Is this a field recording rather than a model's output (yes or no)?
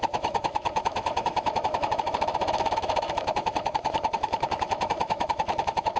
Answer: no